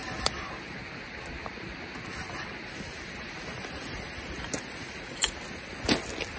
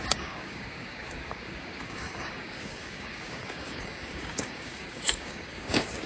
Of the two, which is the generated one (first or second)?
second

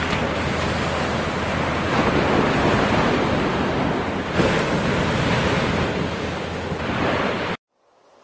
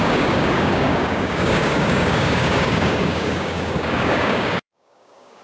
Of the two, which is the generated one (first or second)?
second